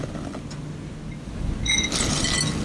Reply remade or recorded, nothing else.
recorded